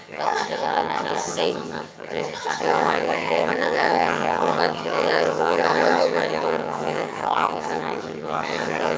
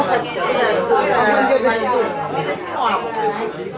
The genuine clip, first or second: second